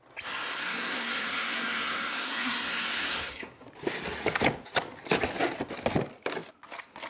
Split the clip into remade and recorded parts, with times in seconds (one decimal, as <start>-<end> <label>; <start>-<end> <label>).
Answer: 0.0-0.5 recorded; 0.5-3.6 remade; 3.6-7.1 recorded